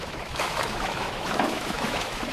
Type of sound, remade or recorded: remade